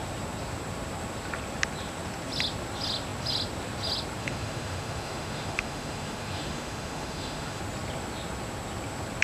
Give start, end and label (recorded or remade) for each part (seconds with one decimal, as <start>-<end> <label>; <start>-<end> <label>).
0.0-4.2 recorded; 4.2-7.6 remade; 7.6-9.2 recorded